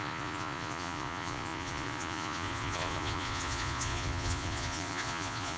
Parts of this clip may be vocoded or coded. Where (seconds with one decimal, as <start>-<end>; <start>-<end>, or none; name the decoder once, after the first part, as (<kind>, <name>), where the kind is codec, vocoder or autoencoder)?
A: 0.0-5.6 (vocoder, Vocos)